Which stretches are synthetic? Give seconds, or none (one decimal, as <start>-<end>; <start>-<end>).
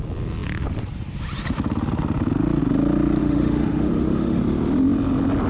3.2-4.4